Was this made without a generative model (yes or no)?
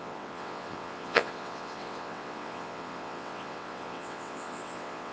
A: no